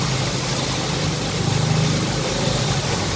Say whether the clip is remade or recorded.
recorded